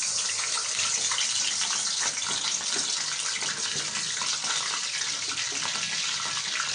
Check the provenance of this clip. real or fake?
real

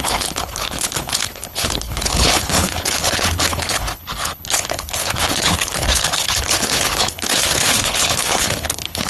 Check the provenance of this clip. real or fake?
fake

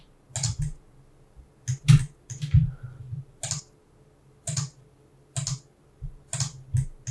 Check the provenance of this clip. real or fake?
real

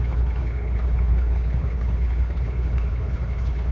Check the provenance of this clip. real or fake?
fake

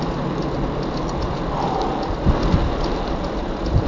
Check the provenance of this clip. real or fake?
real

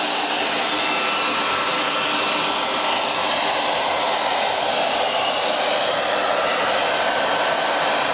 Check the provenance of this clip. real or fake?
real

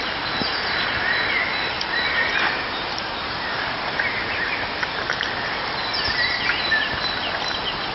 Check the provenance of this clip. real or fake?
real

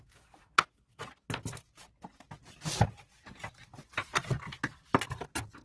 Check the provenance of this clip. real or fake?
real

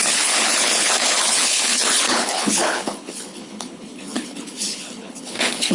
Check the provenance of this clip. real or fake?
fake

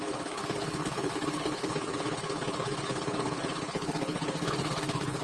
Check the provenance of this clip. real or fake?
fake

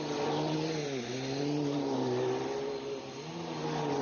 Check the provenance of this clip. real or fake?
real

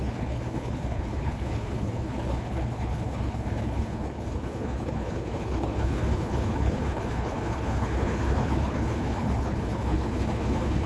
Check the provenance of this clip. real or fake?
fake